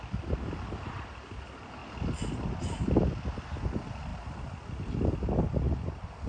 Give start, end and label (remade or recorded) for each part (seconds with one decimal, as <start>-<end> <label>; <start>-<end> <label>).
0.0-6.3 recorded